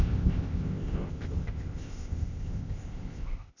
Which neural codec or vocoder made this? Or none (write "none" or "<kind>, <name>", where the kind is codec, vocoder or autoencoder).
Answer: codec, ZipCodec